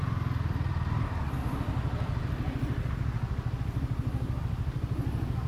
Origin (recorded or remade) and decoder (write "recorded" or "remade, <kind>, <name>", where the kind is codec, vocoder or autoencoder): recorded